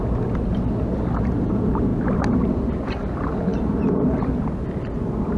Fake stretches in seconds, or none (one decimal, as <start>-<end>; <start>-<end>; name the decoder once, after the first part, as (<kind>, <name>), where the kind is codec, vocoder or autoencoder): none